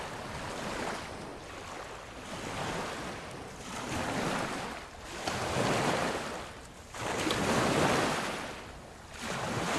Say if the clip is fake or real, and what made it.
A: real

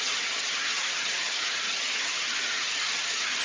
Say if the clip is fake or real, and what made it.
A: fake, vocoder, HiFi-GAN